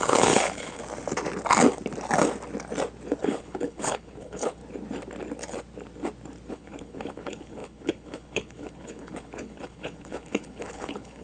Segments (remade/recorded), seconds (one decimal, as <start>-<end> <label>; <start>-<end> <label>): 0.0-0.8 remade; 0.8-3.2 recorded; 3.2-4.6 remade; 4.6-6.5 recorded; 6.5-11.2 remade